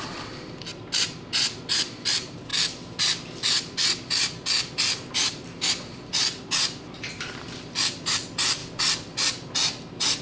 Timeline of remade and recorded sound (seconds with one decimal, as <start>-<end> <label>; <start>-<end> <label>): 0.0-2.5 remade; 2.5-5.7 recorded; 5.7-8.6 remade; 8.6-10.2 recorded